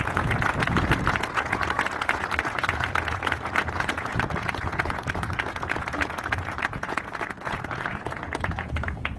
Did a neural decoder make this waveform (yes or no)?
yes